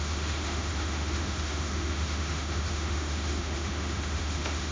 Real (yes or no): no